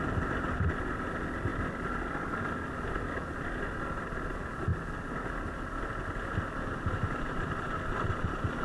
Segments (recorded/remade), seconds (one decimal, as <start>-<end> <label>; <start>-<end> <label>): 0.0-8.6 recorded